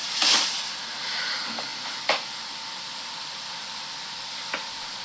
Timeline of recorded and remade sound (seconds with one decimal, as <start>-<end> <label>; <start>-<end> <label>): 0.0-0.6 remade; 0.6-1.7 recorded; 1.7-5.0 remade

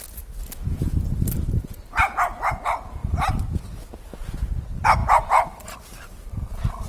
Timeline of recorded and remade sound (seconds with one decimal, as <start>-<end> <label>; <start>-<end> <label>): 0.0-0.7 recorded; 0.7-2.5 remade; 2.5-5.0 recorded; 5.0-6.5 remade; 6.5-6.9 recorded